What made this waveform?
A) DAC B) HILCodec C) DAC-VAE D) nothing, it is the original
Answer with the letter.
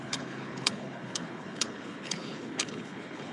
B